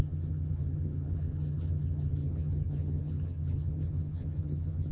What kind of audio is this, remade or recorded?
remade